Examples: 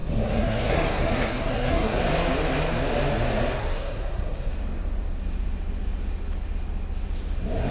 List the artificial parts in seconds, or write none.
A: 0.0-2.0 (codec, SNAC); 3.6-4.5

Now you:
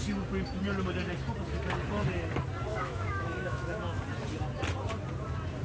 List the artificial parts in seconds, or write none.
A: 2.7-4.0 (autoencoder, DAC-VAE)

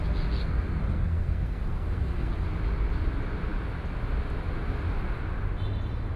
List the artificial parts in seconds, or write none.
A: 0.4-2.3 (codec, SNAC)

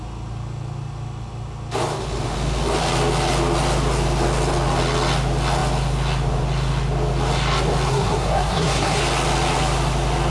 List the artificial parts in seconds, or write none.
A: 7.9-9.0 (codec, SNAC)

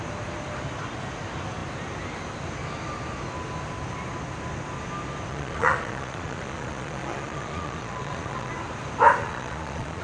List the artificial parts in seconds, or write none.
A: 5.3-8.5 (vocoder, Vocos); 9.2-10.0

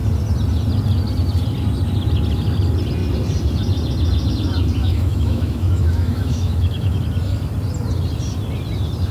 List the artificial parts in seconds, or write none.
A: 4.8-7.0 (autoencoder, DAC-VAE)